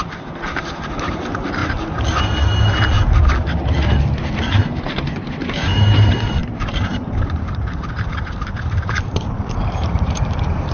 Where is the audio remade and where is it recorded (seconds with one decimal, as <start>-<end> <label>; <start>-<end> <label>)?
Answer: 0.0-1.6 remade; 1.6-4.4 recorded; 4.4-10.7 remade